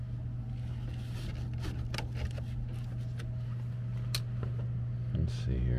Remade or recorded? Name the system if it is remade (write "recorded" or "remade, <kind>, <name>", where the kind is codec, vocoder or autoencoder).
recorded